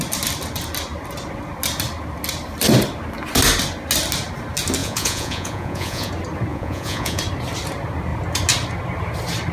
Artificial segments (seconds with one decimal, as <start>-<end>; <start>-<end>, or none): 4.8-6.1; 6.5-7.2